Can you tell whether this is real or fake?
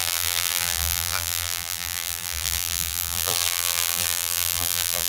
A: fake